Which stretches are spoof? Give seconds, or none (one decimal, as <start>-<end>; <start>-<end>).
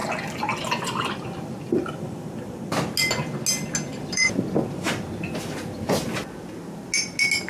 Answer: 0.0-2.6; 3.9-4.4